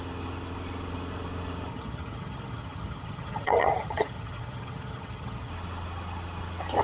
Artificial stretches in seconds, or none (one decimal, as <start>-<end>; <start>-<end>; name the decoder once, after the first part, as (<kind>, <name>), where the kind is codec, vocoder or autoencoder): 1.7-5.5 (vocoder, HiFi-GAN)